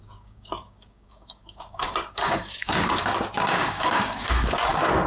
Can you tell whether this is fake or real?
fake